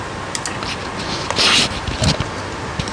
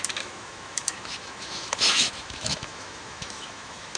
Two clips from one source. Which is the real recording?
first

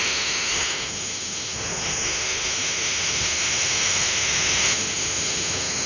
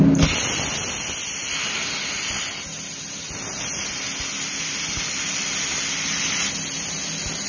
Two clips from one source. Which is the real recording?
second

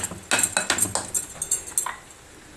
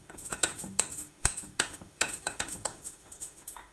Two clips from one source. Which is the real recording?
first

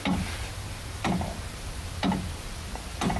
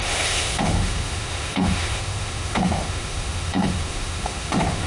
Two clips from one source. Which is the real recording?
first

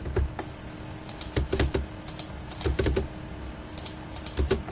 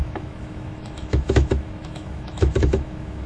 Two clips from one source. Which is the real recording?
first